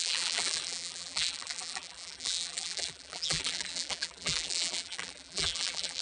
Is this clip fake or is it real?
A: fake